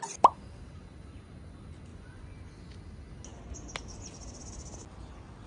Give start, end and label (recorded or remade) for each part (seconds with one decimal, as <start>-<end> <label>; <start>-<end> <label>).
0.0-1.9 recorded; 1.9-2.5 remade; 2.5-5.5 recorded